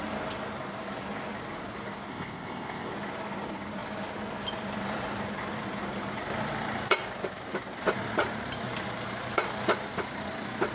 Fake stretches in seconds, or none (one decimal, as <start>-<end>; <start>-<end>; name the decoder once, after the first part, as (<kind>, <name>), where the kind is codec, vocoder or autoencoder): 2.1-2.9 (codec, ZipCodec)